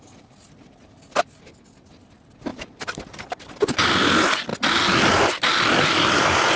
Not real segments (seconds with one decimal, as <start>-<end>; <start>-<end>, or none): 2.5-3.4